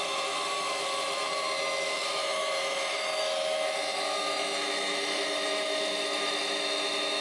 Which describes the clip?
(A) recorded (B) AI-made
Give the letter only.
B